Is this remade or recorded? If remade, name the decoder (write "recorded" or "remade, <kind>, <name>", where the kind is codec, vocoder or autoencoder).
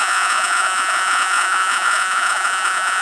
remade, vocoder, Vocos